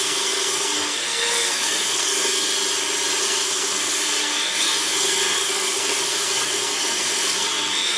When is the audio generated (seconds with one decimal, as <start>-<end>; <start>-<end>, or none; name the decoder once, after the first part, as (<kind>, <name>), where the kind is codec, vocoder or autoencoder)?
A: 0.0-2.5 (codec, SNAC); 3.2-8.0